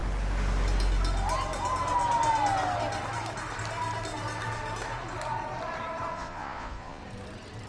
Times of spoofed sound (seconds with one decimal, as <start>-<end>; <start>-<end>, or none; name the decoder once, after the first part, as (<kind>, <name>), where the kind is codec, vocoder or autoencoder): 6.1-7.0 (vocoder, Vocos)